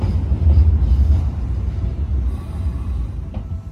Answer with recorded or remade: recorded